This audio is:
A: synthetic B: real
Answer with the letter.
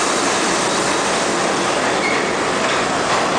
B